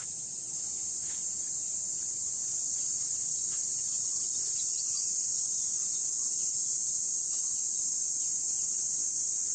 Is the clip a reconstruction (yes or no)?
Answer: no